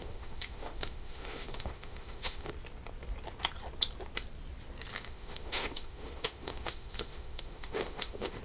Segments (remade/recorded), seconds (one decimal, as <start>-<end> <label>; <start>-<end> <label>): 0.0-2.5 remade; 2.5-4.9 recorded; 4.9-8.4 remade